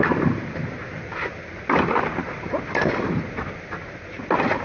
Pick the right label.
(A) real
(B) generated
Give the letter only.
A